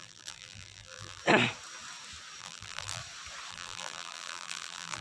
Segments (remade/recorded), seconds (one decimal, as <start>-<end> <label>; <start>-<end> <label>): 0.0-1.2 remade; 1.2-2.4 recorded; 2.4-3.0 remade; 3.0-3.5 recorded; 3.5-5.0 remade